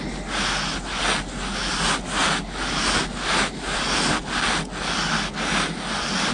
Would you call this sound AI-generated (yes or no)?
no